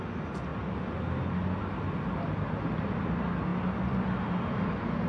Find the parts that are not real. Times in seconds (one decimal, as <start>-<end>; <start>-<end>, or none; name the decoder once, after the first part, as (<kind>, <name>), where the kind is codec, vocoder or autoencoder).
none